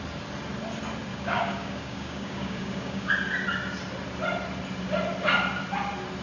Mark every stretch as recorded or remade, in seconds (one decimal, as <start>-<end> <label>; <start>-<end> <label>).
0.0-1.1 recorded; 1.1-3.1 remade; 3.1-6.2 recorded